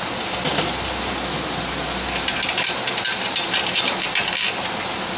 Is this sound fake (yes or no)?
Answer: no